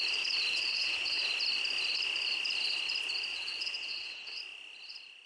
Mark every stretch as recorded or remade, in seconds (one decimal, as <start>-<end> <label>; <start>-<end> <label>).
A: 0.0-0.5 recorded; 0.5-1.2 remade; 1.2-3.3 recorded; 3.3-4.4 remade; 4.4-5.3 recorded